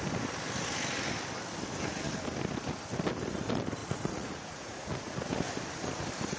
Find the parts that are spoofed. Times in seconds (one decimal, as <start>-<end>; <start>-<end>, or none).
3.8-5.3